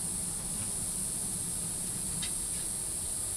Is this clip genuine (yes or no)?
no